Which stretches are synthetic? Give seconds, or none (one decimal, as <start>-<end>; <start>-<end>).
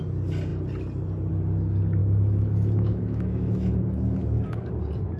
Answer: 2.0-4.7